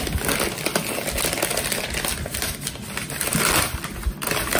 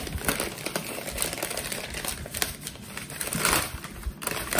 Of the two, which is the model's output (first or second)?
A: second